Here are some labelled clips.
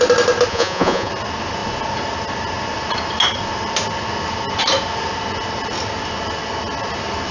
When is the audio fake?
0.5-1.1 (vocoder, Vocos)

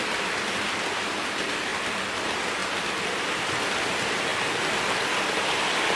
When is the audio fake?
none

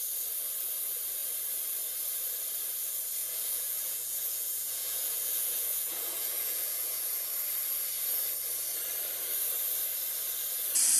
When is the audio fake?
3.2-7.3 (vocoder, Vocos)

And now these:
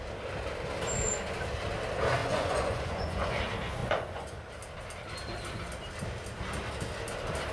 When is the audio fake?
2.2-3.4 (vocoder, Vocos); 3.8-4.4